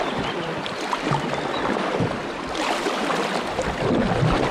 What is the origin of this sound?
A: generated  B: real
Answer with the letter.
B